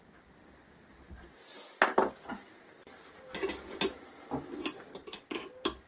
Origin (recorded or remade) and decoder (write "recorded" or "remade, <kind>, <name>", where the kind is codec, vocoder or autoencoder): recorded